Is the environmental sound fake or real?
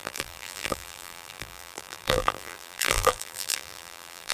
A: fake